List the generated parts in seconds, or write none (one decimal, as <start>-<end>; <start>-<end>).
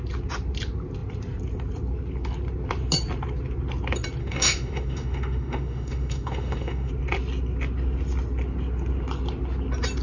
4.2-6.9